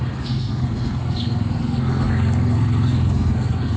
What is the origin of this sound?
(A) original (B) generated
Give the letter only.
B